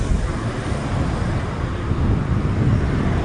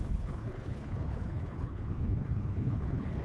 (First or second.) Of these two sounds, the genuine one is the first